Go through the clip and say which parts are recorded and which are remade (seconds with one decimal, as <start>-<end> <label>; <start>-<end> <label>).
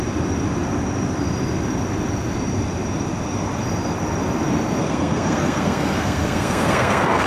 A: 0.0-4.8 recorded; 4.8-7.3 remade